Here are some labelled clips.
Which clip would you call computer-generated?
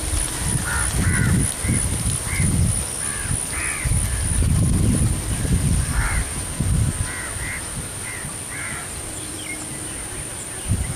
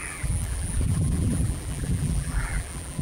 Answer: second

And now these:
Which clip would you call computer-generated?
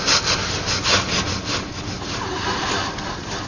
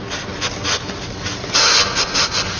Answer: first